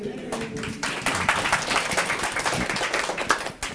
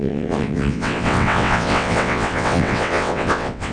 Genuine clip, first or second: first